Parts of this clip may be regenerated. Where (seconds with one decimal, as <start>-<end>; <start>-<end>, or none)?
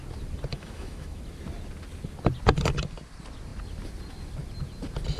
0.5-1.2